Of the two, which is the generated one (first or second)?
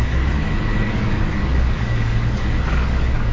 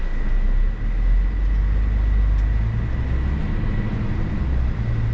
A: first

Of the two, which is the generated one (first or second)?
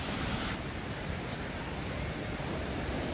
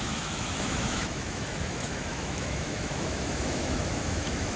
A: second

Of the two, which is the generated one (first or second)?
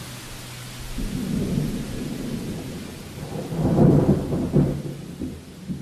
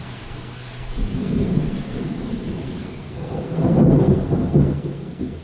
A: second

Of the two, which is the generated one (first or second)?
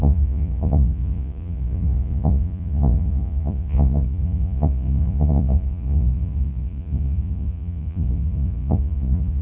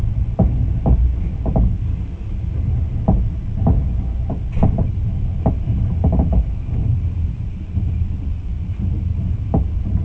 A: first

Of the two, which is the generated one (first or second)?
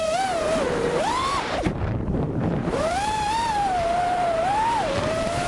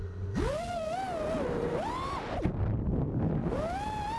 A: first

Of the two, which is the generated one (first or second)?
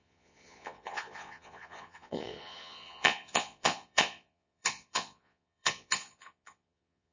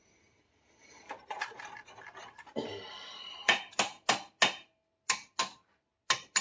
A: first